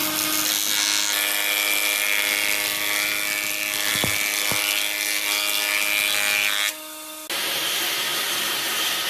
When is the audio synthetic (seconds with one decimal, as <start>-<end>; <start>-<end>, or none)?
none